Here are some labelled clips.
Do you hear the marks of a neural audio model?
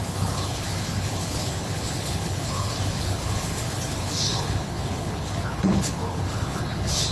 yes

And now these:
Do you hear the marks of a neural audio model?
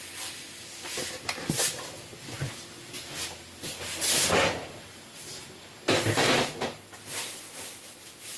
no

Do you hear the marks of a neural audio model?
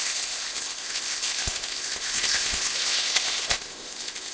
yes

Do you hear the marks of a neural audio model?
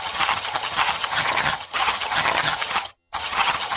yes